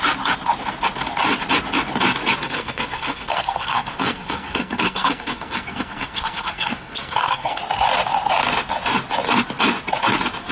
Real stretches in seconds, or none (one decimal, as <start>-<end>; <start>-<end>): 0.0-2.4; 7.6-10.5